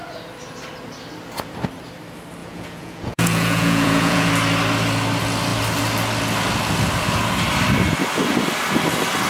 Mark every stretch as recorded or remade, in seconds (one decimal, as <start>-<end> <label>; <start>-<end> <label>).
0.0-2.4 recorded; 2.4-4.3 remade; 4.3-9.3 recorded